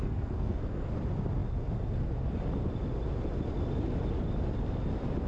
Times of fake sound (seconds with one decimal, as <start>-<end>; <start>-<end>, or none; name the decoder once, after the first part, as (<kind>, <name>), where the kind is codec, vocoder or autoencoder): 0.0-0.9 (codec, SNAC)